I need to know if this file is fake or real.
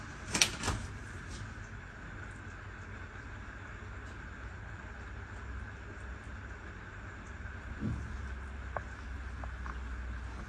real